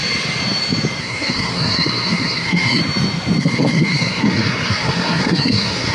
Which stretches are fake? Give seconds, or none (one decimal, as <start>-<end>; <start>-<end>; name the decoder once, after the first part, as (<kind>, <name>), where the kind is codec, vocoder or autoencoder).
1.0-2.8 (codec, SNAC); 3.4-5.9